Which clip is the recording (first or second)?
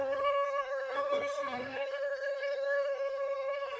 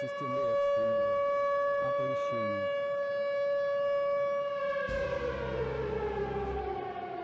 second